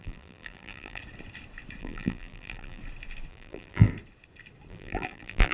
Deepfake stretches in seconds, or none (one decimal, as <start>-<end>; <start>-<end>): 0.0-1.0; 1.8-2.8; 3.3-3.9; 4.7-5.5